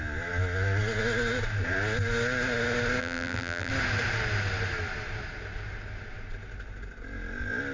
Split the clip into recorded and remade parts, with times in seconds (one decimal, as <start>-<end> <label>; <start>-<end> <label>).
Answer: 0.0-3.0 recorded; 3.0-3.7 remade; 3.7-7.7 recorded